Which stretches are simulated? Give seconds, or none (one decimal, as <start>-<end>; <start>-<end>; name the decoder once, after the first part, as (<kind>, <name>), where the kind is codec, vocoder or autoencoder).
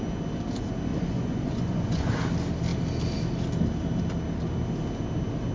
0.9-2.1 (vocoder, Vocos)